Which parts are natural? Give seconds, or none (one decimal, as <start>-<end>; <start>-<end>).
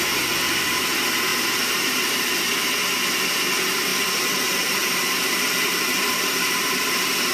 0.0-1.3; 2.2-3.9; 6.5-7.3